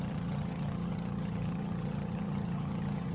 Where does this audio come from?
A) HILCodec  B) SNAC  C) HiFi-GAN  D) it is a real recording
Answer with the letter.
C